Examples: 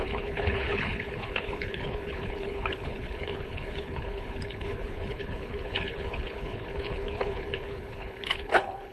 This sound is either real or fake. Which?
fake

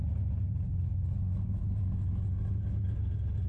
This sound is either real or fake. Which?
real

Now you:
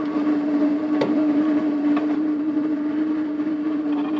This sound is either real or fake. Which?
fake